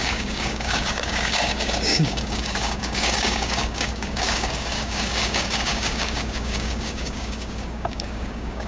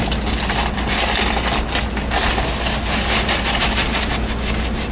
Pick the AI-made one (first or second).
first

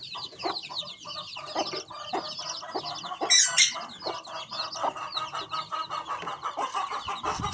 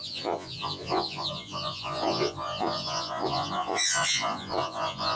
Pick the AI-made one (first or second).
second